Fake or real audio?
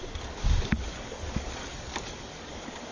fake